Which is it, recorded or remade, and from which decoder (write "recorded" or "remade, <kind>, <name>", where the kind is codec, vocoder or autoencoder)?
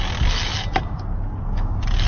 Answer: recorded